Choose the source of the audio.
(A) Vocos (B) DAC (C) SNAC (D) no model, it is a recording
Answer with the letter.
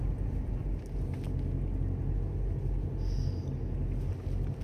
D